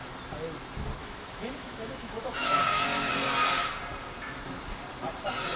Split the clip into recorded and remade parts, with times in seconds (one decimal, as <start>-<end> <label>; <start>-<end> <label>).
0.0-1.0 recorded; 1.0-3.1 remade; 3.1-5.6 recorded